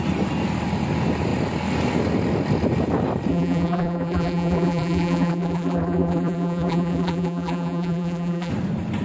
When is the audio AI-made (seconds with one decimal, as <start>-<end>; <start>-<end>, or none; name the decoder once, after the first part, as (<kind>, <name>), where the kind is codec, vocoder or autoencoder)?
3.3-8.5 (vocoder, BigVGAN v2)